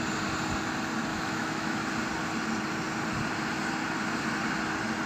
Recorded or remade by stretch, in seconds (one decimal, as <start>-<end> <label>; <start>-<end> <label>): 0.0-1.1 recorded; 1.1-1.7 remade; 1.7-5.1 recorded